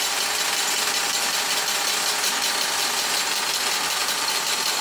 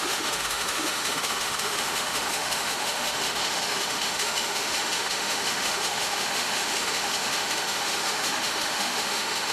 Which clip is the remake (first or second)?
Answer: second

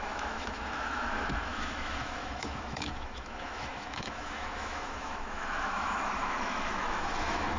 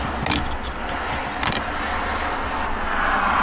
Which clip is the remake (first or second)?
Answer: first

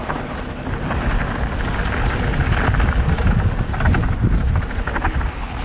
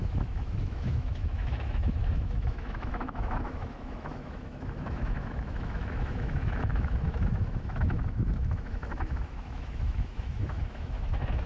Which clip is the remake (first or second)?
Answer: second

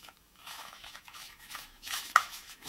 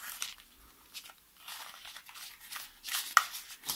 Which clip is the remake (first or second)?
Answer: first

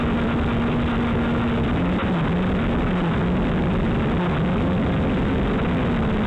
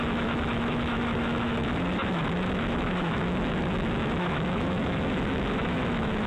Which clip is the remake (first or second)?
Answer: second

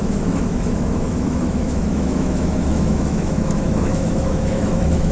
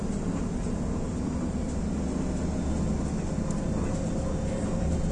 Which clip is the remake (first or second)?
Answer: first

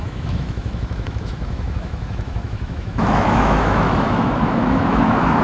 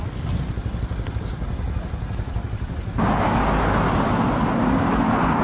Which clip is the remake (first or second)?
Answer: first